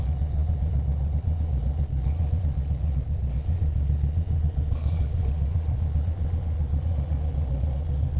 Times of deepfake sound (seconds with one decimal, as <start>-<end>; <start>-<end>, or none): 0.0-8.2